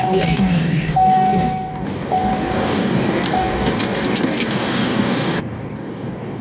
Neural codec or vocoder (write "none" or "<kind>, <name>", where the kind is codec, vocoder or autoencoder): codec, DAC